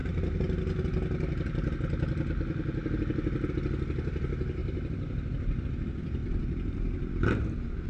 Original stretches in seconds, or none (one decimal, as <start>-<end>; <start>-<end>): 0.0-4.6; 5.6-6.2; 7.1-7.9